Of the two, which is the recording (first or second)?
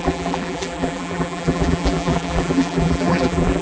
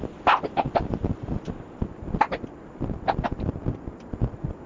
second